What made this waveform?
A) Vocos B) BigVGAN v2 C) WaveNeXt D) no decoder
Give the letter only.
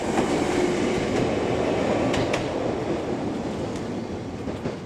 D